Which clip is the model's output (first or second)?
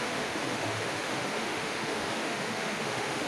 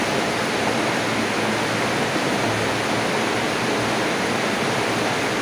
first